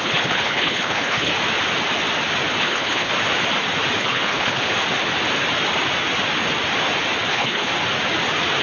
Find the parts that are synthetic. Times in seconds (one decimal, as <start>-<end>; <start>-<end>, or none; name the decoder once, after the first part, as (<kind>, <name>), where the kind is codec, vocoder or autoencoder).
0.0-1.3 (codec, HILCodec); 2.6-3.1; 4.0-4.7; 7.3-7.7

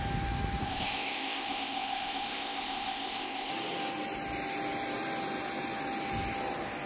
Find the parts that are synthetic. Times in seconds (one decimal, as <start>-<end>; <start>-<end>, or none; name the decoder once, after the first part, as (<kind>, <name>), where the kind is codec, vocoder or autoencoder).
0.6-3.5 (codec, ZipCodec)

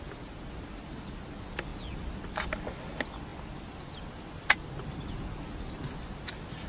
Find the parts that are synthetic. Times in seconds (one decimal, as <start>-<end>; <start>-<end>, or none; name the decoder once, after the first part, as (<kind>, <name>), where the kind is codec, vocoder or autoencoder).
none

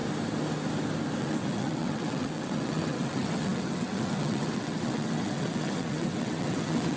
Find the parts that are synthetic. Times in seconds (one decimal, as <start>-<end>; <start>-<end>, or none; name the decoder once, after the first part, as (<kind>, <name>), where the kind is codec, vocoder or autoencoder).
1.2-7.0 (vocoder, WaveNeXt)

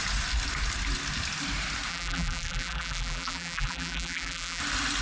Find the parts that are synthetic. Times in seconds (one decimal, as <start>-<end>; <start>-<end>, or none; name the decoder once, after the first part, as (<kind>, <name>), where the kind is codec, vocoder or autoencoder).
1.9-4.6 (vocoder, BigVGAN v2)

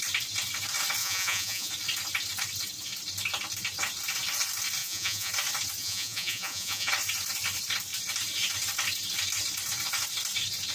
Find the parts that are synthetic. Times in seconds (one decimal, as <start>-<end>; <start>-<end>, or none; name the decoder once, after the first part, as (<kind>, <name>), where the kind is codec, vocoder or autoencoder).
1.0-1.7 (vocoder, Vocos); 4.8-5.3; 5.8-6.9